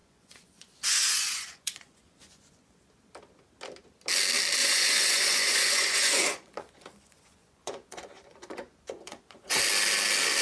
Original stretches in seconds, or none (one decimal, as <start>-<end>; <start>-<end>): 2.9-4.6; 9.6-10.4